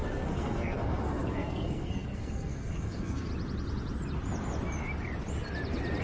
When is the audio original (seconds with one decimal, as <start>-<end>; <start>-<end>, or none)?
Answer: 3.3-6.0

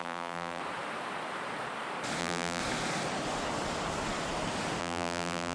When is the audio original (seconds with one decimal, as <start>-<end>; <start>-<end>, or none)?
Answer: 0.6-2.2; 2.6-4.8

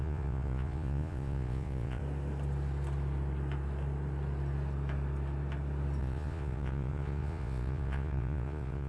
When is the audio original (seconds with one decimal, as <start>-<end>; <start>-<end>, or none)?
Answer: 2.0-6.0

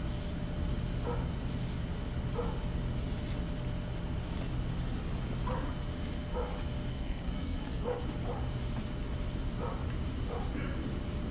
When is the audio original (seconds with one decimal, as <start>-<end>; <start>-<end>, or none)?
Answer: 0.0-6.9; 8.0-11.3

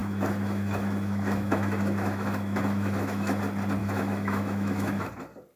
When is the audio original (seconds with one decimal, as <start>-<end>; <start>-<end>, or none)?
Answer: 3.4-3.8; 5.1-5.6

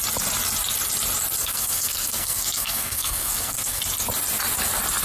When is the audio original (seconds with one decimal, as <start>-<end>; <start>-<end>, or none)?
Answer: 0.0-1.4; 3.8-5.0

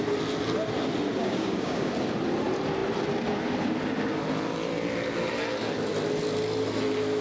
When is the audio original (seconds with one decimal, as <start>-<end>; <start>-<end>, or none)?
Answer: 0.0-1.2; 1.9-7.2